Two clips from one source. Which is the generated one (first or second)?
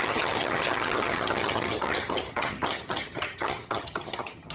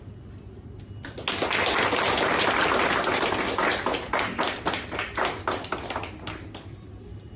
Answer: first